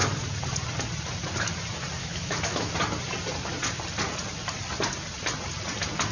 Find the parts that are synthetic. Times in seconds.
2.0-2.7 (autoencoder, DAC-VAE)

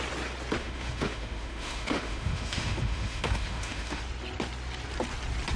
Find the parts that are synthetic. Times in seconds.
0.6-4.0 (autoencoder, DAC-VAE)

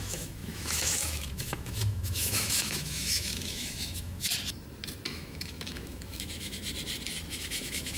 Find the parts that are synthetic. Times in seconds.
0.0-4.3 (autoencoder, DAC-VAE); 5.1-6.6; 7.3-8.0

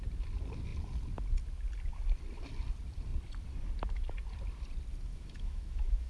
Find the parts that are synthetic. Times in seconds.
5.1-6.1 (autoencoder, DAC-VAE)

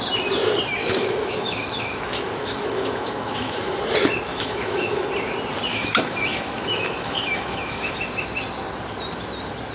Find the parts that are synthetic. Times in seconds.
0.8-3.8 (autoencoder, DAC-VAE); 4.3-5.1; 5.7-8.0

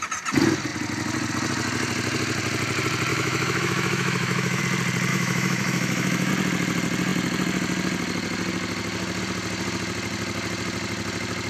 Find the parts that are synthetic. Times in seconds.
3.1-4.6 (autoencoder, DAC-VAE); 5.1-6.3

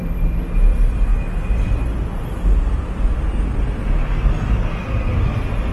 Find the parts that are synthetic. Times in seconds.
none